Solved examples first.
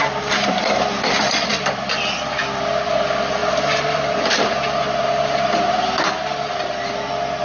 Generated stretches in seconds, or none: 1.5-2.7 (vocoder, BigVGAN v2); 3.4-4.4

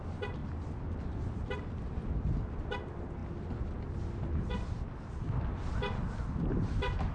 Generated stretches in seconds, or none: none

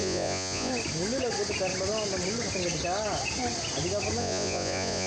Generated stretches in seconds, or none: 0.0-0.7 (vocoder, Vocos); 4.2-5.1

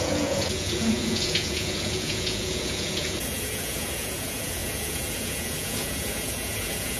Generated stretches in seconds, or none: 0.0-7.0 (vocoder, Vocos)

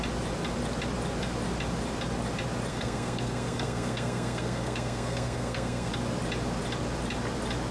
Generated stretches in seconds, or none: 2.7-5.9 (codec, SNAC)

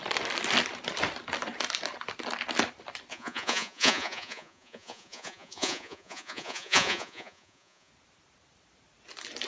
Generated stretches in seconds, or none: 3.1-7.9 (vocoder, Vocos)